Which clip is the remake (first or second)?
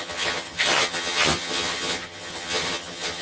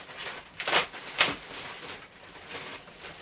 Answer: first